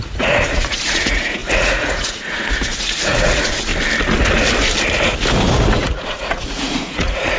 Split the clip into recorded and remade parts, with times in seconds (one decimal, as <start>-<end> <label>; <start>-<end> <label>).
0.0-3.7 remade; 3.7-5.8 recorded; 5.8-7.4 remade